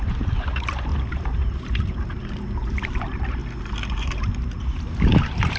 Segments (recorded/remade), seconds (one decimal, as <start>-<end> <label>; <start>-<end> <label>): 0.0-3.4 remade; 3.4-3.9 recorded; 3.9-5.6 remade